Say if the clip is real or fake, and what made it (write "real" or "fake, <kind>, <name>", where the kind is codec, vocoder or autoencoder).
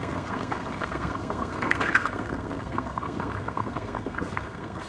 fake, codec, SNAC